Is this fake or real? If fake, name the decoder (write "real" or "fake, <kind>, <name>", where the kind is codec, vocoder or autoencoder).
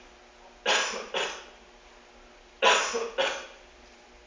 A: real